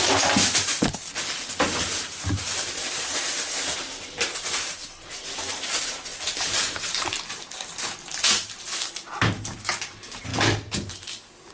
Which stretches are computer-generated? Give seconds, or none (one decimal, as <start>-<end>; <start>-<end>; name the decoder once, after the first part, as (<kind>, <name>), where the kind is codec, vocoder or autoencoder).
0.0-1.0 (vocoder, BigVGAN v2); 1.6-4.8; 5.5-10.3